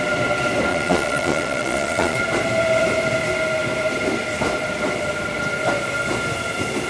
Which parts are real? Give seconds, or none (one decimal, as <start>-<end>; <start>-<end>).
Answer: 0.0-0.7; 2.2-6.9